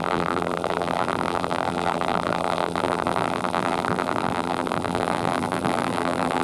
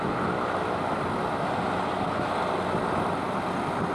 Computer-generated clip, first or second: first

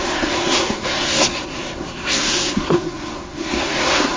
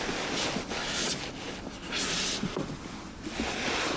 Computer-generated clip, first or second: first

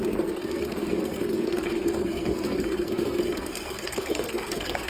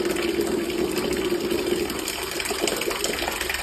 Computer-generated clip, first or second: first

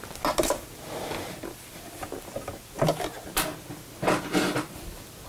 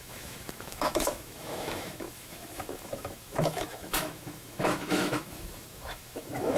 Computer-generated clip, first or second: second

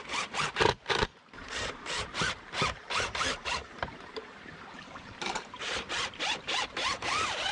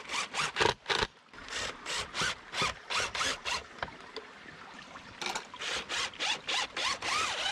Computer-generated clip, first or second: first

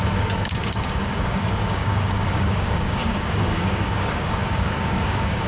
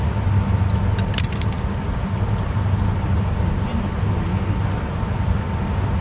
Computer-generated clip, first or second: first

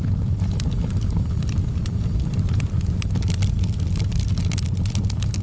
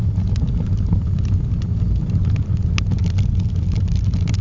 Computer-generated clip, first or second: first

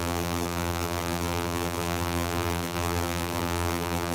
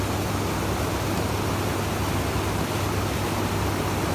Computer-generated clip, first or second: first